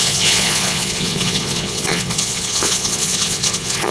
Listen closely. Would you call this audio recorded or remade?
remade